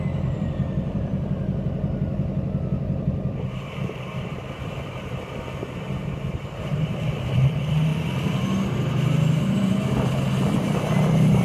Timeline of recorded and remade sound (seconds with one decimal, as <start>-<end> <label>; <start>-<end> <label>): 0.0-7.9 remade; 7.9-9.4 recorded; 9.4-11.4 remade